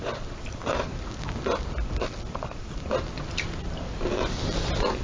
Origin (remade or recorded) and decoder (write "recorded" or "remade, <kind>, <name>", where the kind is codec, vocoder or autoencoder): recorded